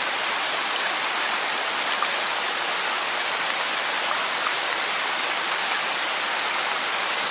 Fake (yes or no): no